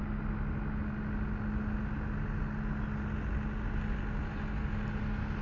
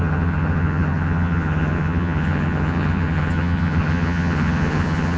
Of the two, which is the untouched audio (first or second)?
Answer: first